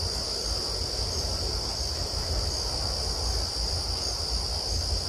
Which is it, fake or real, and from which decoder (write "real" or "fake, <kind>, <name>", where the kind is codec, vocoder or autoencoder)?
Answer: real